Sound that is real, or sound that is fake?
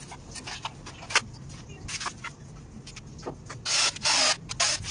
real